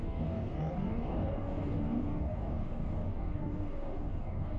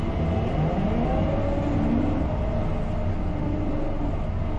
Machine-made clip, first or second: first